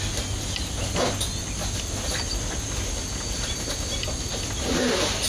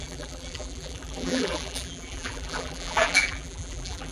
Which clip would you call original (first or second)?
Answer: first